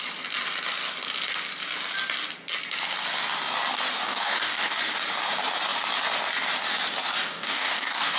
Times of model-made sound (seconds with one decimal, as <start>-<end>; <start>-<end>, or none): 4.0-4.8; 7.2-8.2